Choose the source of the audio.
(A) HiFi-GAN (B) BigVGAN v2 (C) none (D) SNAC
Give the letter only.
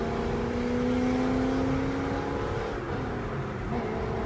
C